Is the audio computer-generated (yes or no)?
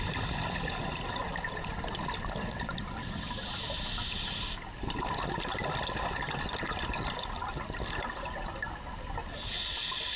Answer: no